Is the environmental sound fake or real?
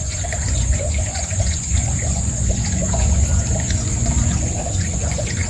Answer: fake